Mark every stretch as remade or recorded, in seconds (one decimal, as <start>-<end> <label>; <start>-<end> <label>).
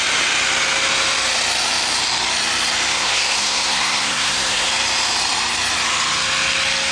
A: 0.0-2.9 recorded; 2.9-4.7 remade; 4.7-6.9 recorded